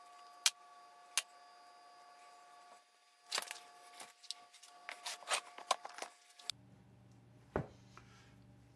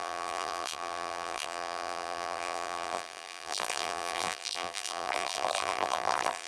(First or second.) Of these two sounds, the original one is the first